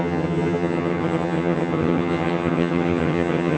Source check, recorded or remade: remade